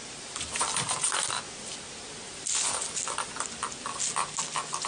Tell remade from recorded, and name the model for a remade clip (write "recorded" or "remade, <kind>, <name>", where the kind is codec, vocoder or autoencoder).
recorded